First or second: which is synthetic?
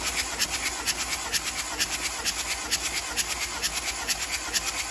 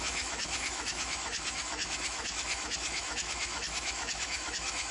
second